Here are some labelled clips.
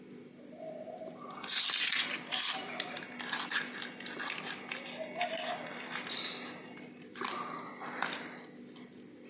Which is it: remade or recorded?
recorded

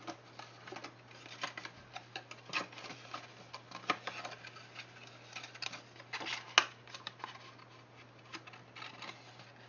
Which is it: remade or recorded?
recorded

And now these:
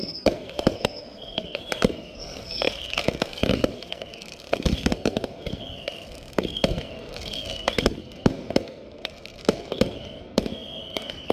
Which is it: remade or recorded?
remade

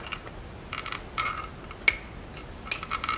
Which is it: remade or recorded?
recorded